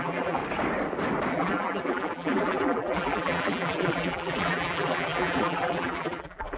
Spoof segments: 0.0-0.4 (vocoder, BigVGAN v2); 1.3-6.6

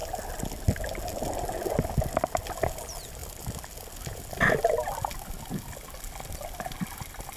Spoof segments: none